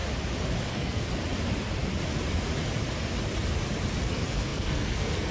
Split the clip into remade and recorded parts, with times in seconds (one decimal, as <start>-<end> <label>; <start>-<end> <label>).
0.0-0.7 recorded; 0.7-1.1 remade; 1.1-4.1 recorded; 4.1-5.3 remade